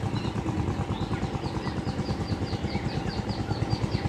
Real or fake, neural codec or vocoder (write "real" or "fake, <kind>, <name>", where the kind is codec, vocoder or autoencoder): real